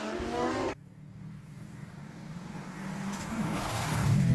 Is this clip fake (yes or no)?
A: yes